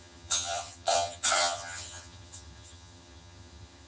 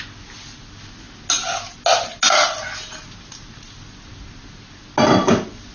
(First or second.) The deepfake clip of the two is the first